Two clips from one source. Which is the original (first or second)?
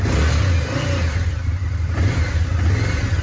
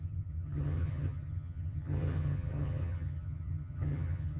first